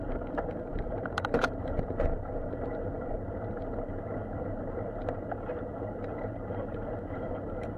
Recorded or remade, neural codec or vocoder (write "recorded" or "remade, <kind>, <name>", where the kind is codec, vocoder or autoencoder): remade, vocoder, BigVGAN v2